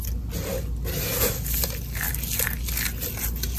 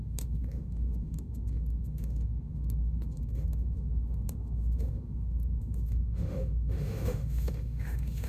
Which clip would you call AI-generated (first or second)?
second